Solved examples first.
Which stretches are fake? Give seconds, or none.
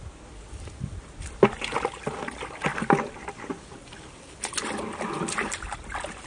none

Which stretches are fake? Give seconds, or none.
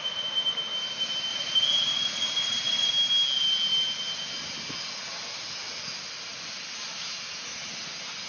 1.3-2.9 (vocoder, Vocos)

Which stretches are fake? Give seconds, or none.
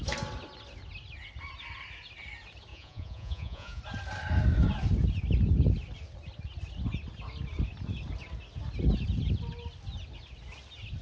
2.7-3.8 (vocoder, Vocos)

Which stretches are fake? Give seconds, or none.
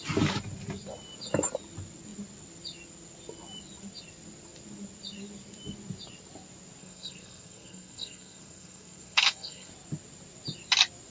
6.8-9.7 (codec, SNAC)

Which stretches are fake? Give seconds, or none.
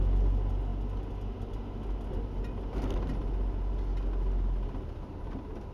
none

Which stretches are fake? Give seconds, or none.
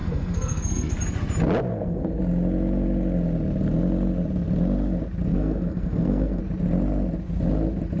0.0-1.0 (codec, SNAC); 1.7-2.2; 5.3-6.4